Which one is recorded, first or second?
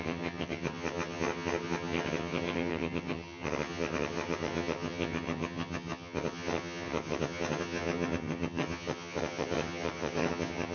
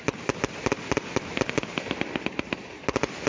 second